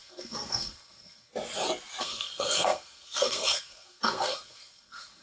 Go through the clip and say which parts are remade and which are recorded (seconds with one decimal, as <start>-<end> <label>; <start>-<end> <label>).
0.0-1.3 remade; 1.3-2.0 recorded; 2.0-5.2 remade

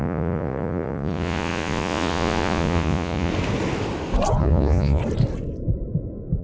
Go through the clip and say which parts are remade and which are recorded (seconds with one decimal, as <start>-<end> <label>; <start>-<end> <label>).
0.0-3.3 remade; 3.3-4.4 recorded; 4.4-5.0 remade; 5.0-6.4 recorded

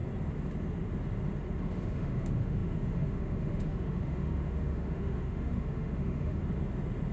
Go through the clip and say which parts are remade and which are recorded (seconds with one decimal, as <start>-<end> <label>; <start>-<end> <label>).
0.0-1.6 recorded; 1.6-6.4 remade; 6.4-7.1 recorded

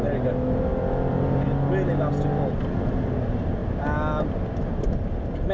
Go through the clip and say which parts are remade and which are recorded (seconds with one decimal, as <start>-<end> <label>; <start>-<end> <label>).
0.0-5.5 recorded